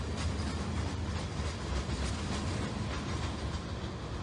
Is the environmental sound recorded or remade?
recorded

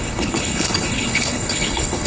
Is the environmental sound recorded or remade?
remade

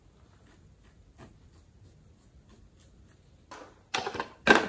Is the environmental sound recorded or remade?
recorded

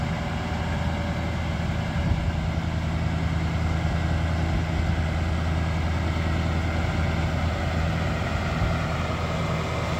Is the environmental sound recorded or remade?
recorded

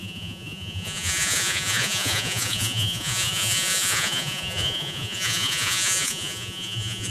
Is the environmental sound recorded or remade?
remade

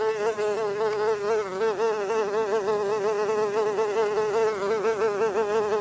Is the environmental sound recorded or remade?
recorded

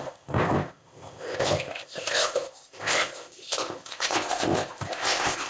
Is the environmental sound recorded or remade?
remade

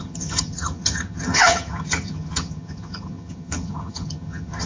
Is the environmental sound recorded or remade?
remade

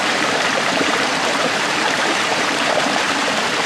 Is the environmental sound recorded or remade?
remade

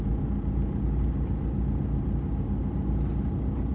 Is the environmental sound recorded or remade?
recorded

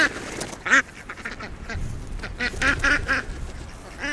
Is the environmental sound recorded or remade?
recorded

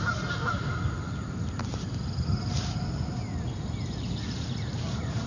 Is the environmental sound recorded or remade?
recorded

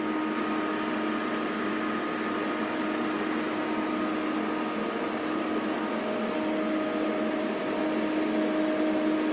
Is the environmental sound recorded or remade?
recorded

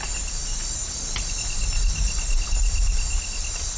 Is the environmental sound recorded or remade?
recorded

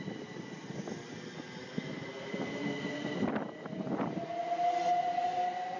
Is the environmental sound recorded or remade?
recorded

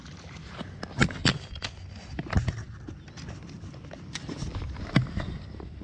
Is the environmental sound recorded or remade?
recorded